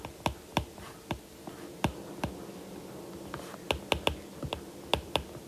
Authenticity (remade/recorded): recorded